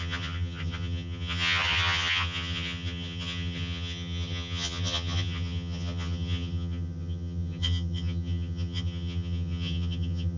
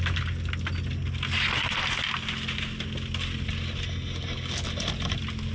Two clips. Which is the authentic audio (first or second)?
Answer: second